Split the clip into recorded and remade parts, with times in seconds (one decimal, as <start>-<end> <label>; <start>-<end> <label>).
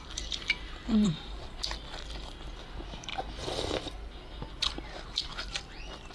0.0-1.4 remade; 1.4-2.2 recorded; 2.2-3.1 remade; 3.1-4.5 recorded; 4.5-6.1 remade